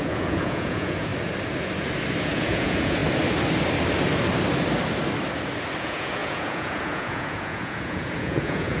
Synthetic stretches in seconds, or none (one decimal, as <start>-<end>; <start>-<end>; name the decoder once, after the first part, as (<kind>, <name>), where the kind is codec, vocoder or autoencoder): 0.0-1.1 (vocoder, Vocos); 2.2-3.0; 5.8-8.8